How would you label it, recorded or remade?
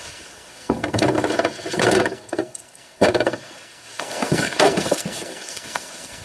remade